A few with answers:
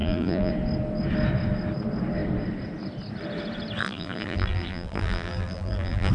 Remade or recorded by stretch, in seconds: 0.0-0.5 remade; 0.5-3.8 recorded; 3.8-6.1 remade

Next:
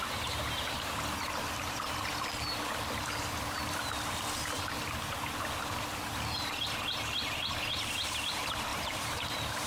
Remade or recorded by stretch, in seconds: 0.0-8.7 recorded; 8.7-9.7 remade

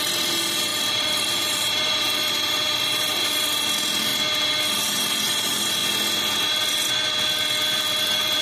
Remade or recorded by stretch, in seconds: 0.0-4.1 remade; 4.1-4.9 recorded; 4.9-5.8 remade; 5.8-8.0 recorded; 8.0-8.4 remade

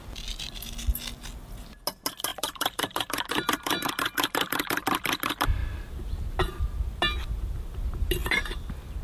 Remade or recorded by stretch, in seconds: 0.0-2.3 recorded; 2.3-3.9 remade; 3.9-9.0 recorded